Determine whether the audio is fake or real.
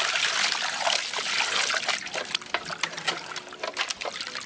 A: real